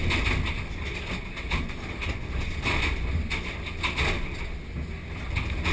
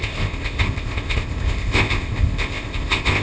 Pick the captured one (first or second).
first